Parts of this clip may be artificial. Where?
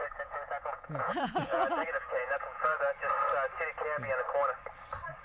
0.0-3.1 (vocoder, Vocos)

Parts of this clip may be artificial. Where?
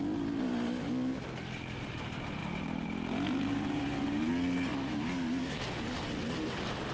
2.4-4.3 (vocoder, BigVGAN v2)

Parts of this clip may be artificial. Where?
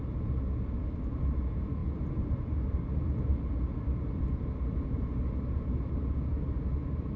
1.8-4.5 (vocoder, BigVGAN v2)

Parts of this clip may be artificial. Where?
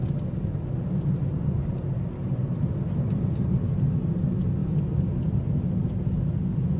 1.3-2.6 (vocoder, BigVGAN v2)